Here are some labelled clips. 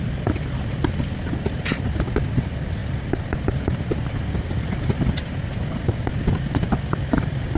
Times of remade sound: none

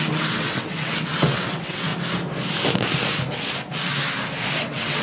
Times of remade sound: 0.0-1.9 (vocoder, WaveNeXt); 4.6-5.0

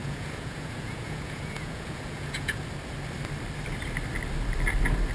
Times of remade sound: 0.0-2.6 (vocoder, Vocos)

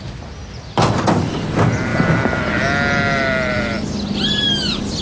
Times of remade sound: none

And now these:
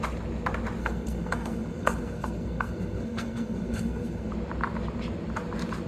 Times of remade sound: 0.8-4.3 (codec, SNAC)

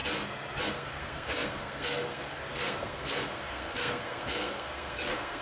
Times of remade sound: 0.7-5.4 (codec, SNAC)

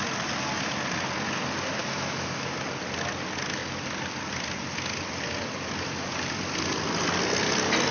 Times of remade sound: 1.8-2.5 (autoencoder, DAC-VAE)

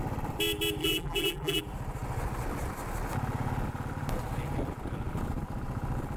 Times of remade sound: 0.8-1.6 (vocoder, BigVGAN v2)